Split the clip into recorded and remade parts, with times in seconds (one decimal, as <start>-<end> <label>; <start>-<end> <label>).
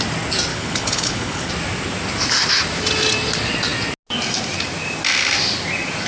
0.0-0.5 recorded; 0.5-1.5 remade; 1.5-6.1 recorded